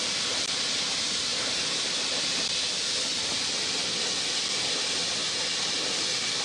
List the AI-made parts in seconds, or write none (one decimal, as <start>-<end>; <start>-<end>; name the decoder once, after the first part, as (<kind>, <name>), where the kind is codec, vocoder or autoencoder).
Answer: none